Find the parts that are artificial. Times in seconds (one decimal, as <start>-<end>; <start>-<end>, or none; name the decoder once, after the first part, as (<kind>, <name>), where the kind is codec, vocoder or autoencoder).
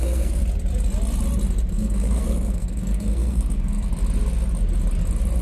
0.0-0.4 (codec, SNAC); 1.7-3.9